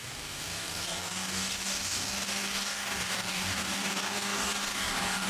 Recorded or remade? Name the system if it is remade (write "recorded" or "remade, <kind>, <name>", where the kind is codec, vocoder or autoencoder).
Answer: remade, codec, DAC